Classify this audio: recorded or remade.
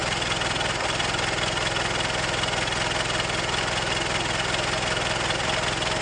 recorded